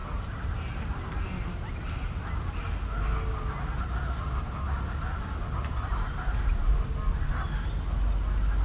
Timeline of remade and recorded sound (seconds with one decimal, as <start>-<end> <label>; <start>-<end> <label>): 0.0-8.6 recorded